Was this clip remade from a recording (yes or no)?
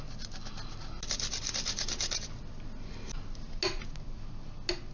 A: no